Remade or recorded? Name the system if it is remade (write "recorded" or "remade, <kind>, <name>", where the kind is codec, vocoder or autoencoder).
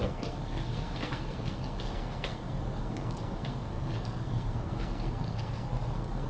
remade, codec, SNAC